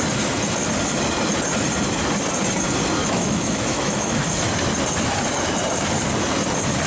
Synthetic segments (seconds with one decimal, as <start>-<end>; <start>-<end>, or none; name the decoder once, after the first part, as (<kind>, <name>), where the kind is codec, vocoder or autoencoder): 3.0-4.2 (autoencoder, DAC-VAE)